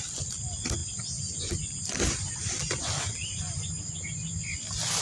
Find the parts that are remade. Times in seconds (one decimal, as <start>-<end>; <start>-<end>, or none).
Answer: none